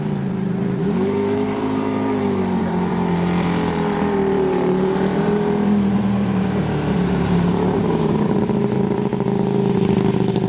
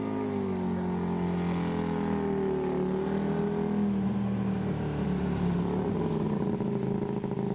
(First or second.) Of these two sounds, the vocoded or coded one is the first